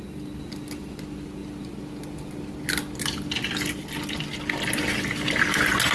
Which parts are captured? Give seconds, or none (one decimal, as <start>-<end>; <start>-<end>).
0.0-5.9